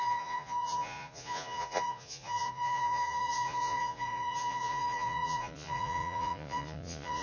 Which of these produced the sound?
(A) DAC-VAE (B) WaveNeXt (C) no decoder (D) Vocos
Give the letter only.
D